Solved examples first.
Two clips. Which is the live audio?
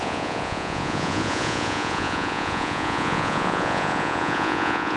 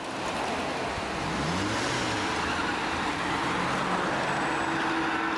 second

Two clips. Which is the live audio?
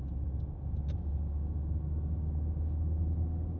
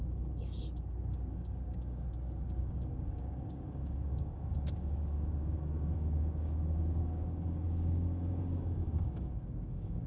first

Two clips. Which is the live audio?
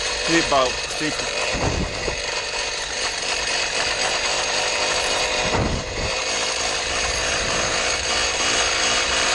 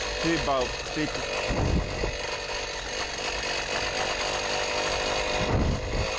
second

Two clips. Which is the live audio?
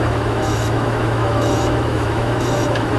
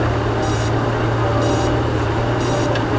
second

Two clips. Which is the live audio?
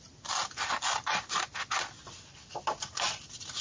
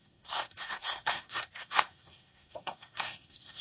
first